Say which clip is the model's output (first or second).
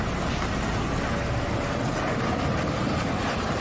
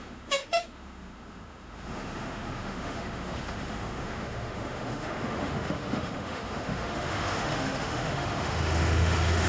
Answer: second